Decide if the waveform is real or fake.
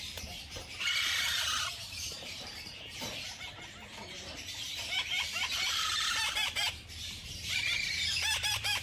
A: fake